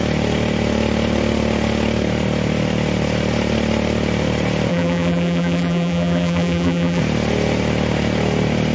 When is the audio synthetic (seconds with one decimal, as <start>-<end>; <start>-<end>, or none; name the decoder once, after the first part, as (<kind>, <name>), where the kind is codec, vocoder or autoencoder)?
4.7-7.0 (vocoder, BigVGAN v2)